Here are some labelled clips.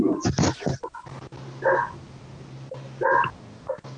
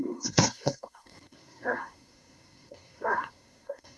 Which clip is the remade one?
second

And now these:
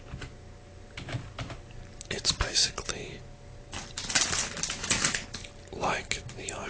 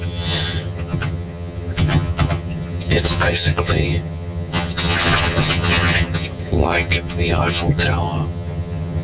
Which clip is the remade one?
second